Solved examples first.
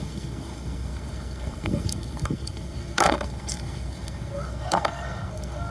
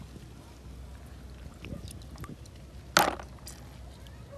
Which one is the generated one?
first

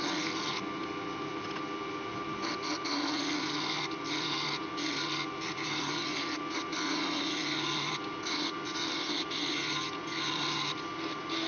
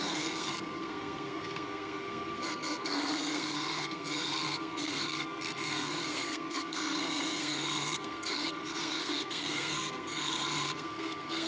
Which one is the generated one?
second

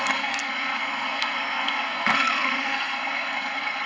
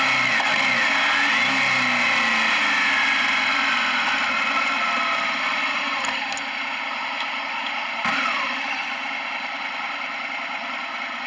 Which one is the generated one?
first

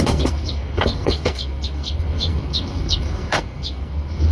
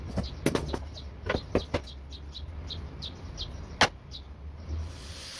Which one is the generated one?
first